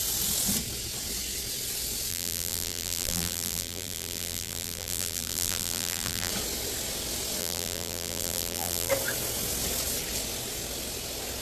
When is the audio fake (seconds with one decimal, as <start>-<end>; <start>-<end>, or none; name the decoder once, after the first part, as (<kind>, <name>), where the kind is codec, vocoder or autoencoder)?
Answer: 2.1-6.3 (vocoder, BigVGAN v2); 7.4-8.9